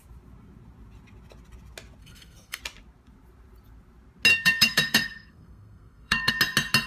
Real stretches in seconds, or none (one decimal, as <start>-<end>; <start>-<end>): 0.0-2.0; 2.6-4.3; 6.3-6.9